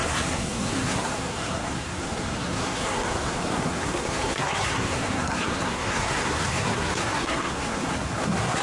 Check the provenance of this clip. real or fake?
fake